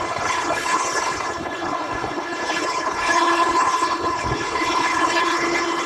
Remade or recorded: remade